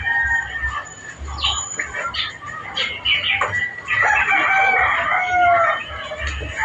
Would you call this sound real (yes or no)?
yes